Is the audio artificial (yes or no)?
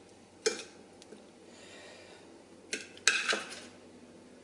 no